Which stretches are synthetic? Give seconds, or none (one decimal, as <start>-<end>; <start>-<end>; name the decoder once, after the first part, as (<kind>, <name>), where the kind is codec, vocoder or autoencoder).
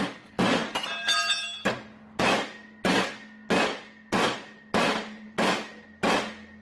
none